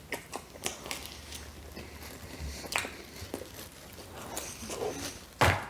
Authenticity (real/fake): real